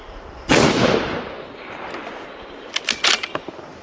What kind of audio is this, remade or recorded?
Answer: recorded